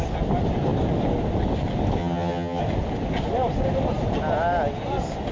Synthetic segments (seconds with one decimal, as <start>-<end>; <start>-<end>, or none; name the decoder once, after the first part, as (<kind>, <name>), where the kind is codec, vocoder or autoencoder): 2.0-2.6 (vocoder, HiFi-GAN)